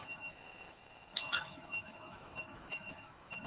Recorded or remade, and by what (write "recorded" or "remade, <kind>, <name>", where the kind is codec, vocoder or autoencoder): remade, autoencoder, DAC-VAE